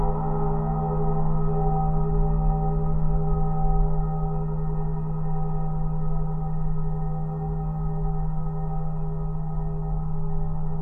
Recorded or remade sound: recorded